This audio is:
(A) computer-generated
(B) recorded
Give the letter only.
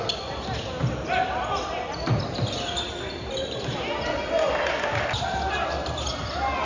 B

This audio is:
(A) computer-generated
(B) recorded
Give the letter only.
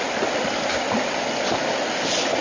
B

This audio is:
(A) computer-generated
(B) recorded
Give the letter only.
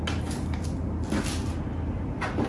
B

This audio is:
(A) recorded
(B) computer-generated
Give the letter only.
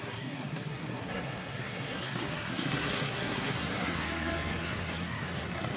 B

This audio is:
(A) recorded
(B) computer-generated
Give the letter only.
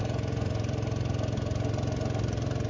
A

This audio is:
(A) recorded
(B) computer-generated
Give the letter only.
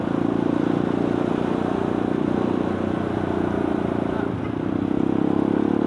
A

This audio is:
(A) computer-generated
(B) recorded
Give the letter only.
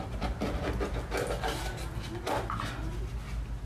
B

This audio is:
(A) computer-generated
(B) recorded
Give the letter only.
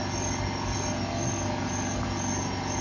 B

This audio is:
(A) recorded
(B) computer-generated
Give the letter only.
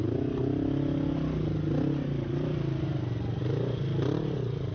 A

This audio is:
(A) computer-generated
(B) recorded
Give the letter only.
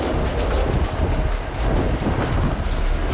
B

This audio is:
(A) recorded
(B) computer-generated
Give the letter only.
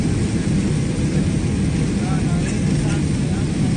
A